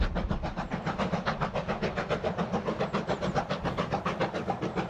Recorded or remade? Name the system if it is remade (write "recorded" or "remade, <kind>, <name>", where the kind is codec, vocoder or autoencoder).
recorded